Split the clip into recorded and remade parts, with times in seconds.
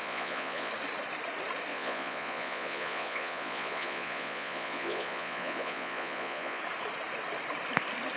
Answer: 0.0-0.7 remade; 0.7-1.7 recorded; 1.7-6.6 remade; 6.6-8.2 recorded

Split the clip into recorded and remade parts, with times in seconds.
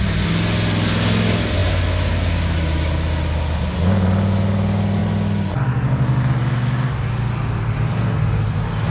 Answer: 0.0-8.9 recorded